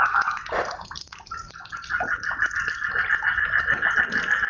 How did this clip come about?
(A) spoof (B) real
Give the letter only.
B